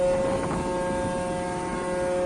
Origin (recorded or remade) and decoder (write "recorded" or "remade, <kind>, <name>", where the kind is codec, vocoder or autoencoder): recorded